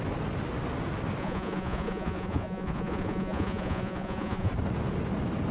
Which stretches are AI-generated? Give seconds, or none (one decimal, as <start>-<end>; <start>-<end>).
1.2-4.5